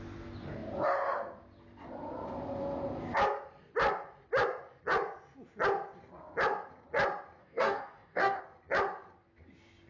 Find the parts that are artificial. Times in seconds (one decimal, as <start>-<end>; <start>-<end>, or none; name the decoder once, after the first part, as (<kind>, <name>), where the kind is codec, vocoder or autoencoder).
7.4-8.4 (codec, DAC)